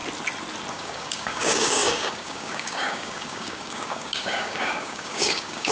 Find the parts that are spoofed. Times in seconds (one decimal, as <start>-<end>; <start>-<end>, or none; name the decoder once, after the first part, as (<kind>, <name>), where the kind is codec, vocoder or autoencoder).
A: 0.7-5.7 (codec, DAC)